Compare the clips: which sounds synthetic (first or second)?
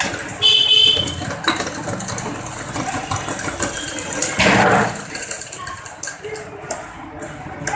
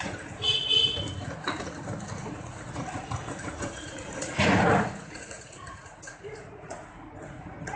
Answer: second